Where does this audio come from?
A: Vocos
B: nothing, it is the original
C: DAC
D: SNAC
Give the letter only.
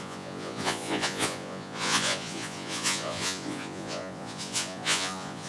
A